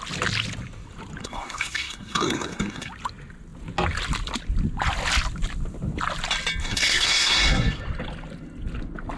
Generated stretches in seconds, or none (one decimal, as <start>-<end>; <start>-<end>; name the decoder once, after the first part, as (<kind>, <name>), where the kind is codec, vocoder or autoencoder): 1.2-2.9 (codec, SNAC); 6.6-7.8